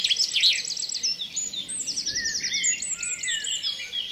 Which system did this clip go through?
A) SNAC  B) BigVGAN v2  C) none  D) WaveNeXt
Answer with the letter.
C